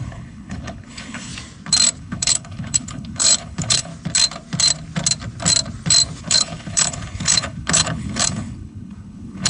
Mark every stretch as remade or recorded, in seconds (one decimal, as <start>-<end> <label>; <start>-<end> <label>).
0.0-1.3 remade; 1.3-2.0 recorded; 2.0-3.9 remade; 3.9-6.2 recorded; 6.2-9.5 remade